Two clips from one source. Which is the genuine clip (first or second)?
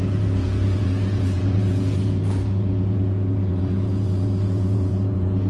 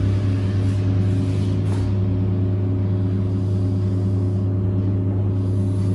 second